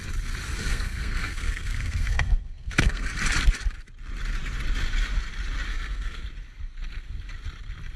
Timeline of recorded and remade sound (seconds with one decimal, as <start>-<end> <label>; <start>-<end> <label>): 0.0-0.6 recorded; 0.6-3.1 remade; 3.1-5.7 recorded; 5.7-6.2 remade; 6.2-8.0 recorded